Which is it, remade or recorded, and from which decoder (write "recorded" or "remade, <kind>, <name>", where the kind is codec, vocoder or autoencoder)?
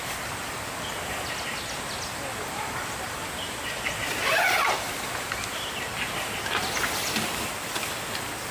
recorded